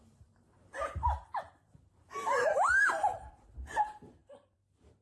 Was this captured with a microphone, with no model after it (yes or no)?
no